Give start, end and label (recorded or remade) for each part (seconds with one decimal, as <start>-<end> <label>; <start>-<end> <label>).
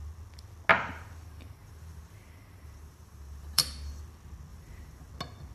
0.0-0.7 recorded; 0.7-4.0 remade; 4.0-4.5 recorded; 4.5-5.1 remade; 5.1-5.5 recorded